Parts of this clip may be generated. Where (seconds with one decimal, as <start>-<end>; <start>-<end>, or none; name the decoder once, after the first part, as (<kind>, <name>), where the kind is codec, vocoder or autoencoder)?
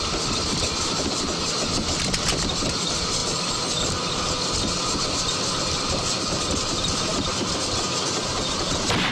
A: 0.0-7.1 (vocoder, BigVGAN v2); 8.7-9.1